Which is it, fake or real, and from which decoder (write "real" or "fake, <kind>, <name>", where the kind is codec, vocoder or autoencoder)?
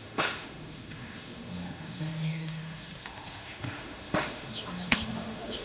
fake, autoencoder, DAC-VAE